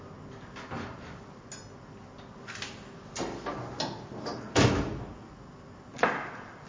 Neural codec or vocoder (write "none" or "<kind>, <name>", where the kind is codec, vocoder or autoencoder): none